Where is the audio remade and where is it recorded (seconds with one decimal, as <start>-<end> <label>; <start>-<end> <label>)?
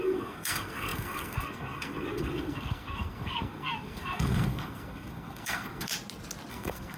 0.0-5.9 remade; 5.9-6.5 recorded; 6.5-7.0 remade